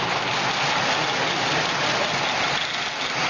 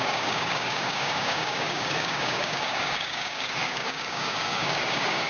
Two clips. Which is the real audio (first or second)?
first